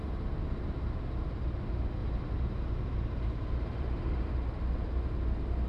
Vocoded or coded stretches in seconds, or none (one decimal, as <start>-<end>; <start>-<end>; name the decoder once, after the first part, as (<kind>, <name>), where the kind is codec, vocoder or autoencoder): 2.0-4.3 (vocoder, BigVGAN v2)